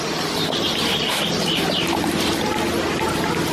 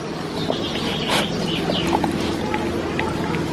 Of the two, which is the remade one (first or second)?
first